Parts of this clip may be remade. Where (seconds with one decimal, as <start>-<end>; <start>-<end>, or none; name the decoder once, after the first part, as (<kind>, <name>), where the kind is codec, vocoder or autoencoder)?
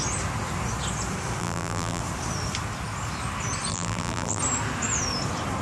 1.4-2.0 (vocoder, BigVGAN v2); 3.7-4.4